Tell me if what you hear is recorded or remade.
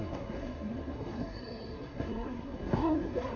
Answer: remade